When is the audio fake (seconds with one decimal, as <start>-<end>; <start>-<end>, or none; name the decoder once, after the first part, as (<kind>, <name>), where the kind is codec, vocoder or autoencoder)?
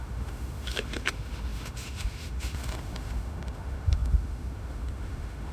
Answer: 0.0-5.5 (autoencoder, DAC-VAE)